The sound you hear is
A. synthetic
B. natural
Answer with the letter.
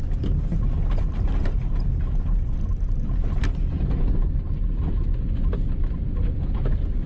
B